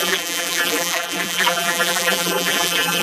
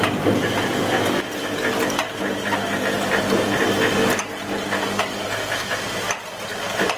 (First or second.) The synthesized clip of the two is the first